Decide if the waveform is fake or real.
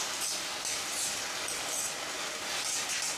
real